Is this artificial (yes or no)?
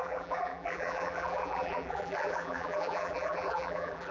yes